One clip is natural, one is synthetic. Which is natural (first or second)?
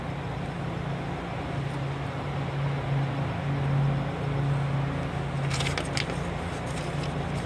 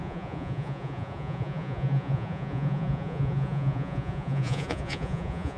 first